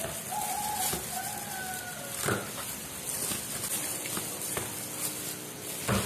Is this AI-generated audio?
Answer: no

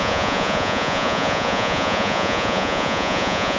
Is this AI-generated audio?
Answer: yes